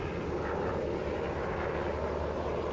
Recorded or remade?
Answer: recorded